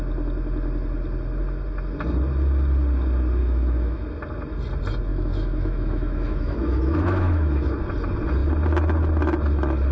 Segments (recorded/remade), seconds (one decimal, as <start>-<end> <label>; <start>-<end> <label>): 0.0-3.4 recorded; 3.4-4.0 remade; 4.0-5.1 recorded; 5.1-7.7 remade; 7.7-9.9 recorded